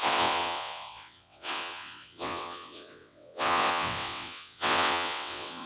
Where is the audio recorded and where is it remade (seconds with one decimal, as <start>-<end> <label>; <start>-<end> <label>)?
0.0-5.7 remade